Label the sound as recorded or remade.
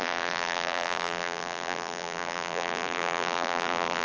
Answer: remade